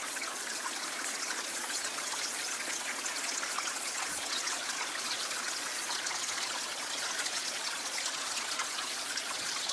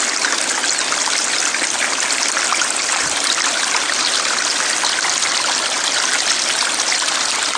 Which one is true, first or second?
second